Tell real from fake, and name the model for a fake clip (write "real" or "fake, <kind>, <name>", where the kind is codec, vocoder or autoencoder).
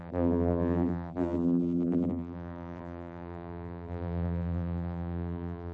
fake, vocoder, BigVGAN v2